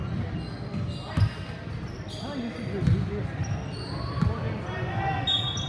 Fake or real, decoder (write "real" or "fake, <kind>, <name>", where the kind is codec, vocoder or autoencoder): real